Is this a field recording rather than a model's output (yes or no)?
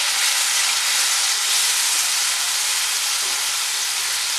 yes